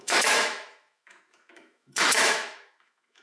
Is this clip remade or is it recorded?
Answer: remade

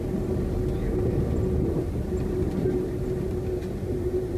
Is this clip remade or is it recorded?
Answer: recorded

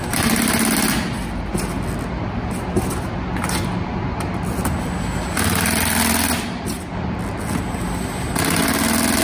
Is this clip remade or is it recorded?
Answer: recorded